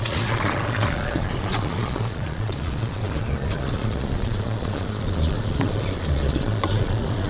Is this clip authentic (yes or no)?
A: no